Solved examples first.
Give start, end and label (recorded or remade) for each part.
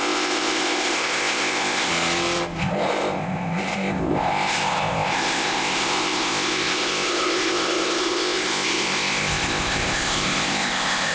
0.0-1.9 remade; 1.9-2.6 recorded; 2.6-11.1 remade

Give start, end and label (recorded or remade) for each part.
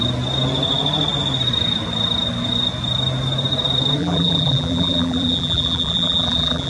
0.0-4.0 recorded; 4.0-6.7 remade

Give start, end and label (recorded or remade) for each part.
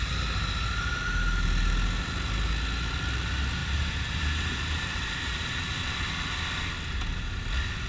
0.0-3.6 recorded; 3.6-5.9 remade; 5.9-7.9 recorded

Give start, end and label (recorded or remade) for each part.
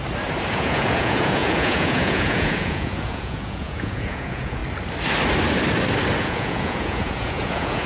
0.0-0.5 recorded; 0.5-4.6 remade; 4.6-6.2 recorded; 6.2-7.9 remade